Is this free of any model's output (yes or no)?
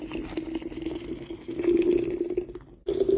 yes